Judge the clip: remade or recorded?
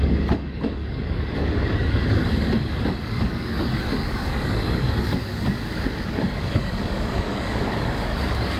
remade